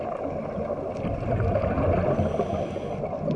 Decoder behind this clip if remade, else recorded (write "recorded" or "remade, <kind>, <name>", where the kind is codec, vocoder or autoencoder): recorded